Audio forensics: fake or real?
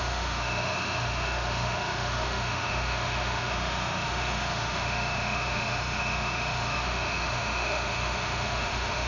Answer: fake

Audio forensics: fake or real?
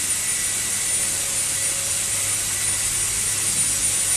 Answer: real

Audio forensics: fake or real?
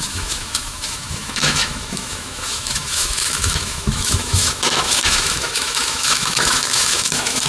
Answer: fake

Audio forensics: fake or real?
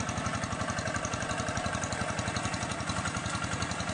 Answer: real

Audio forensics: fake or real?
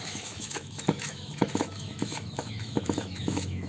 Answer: fake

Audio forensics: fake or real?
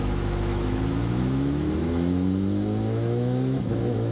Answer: fake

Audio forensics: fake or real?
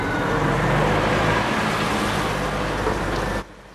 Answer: real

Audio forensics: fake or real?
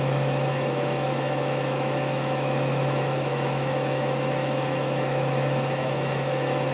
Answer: fake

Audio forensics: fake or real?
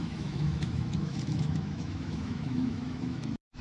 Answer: fake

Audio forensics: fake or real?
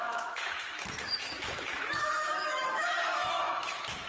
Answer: fake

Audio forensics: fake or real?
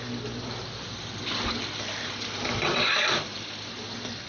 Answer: real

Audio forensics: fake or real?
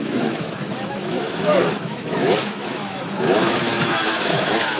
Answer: fake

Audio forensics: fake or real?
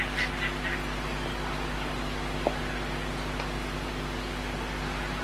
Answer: real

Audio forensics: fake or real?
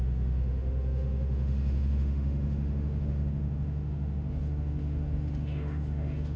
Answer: fake